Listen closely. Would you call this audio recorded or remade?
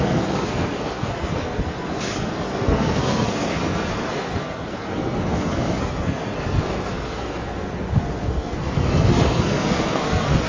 remade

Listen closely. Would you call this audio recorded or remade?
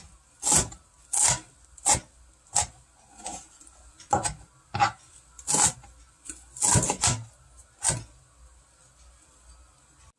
recorded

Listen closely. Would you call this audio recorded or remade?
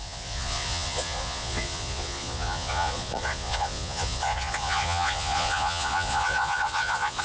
remade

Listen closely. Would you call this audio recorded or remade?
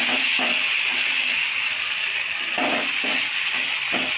recorded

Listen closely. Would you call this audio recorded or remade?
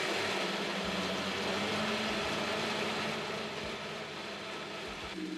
recorded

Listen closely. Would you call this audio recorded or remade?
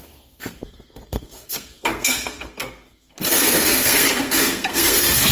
remade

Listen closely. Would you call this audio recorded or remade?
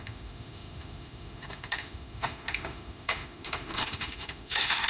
remade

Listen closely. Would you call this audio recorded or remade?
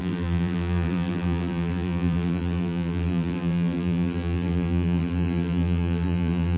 remade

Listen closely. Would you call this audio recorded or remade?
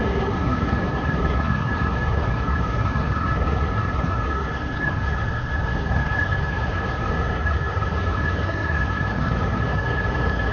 remade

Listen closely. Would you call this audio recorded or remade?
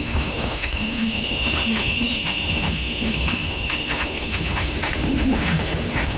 remade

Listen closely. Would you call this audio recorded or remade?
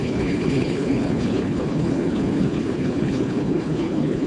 remade